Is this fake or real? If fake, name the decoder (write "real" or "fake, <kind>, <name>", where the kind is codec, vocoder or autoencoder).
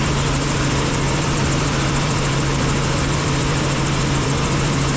fake, vocoder, BigVGAN v2